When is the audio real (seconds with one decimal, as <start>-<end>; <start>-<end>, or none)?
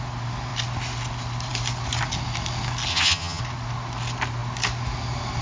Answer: 0.0-2.9; 3.4-5.4